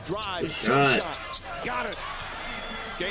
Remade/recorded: recorded